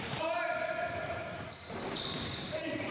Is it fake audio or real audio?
fake